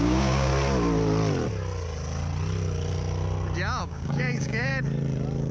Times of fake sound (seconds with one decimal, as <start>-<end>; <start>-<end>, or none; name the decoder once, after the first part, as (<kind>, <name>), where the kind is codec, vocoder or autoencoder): 0.0-0.5 (codec, DAC); 3.8-4.7